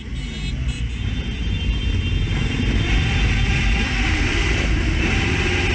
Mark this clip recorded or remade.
recorded